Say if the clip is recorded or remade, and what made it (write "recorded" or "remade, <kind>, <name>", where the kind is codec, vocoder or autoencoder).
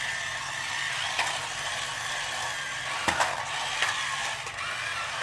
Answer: recorded